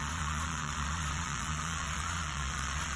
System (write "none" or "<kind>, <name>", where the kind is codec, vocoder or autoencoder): vocoder, Vocos